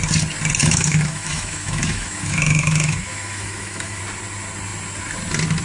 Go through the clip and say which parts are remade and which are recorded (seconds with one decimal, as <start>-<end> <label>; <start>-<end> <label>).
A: 0.0-0.6 recorded; 0.6-4.0 remade; 4.0-5.6 recorded